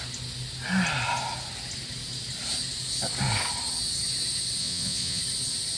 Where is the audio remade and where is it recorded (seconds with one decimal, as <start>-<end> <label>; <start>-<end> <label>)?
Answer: 0.0-4.6 recorded; 4.6-5.2 remade; 5.2-5.8 recorded